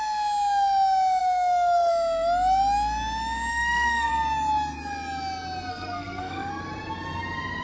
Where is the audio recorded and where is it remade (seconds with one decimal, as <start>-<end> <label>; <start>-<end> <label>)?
0.0-1.2 recorded; 1.2-1.9 remade; 1.9-3.5 recorded; 3.5-4.1 remade; 4.1-5.7 recorded; 5.7-6.6 remade; 6.6-7.6 recorded